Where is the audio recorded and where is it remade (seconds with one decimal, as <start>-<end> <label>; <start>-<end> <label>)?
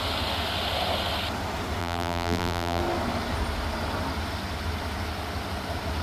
0.0-1.8 recorded; 1.8-2.8 remade; 2.8-6.0 recorded